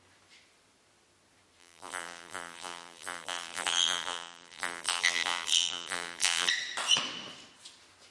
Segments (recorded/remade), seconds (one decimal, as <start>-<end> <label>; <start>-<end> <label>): 0.0-1.6 recorded; 1.6-6.5 remade; 6.5-8.1 recorded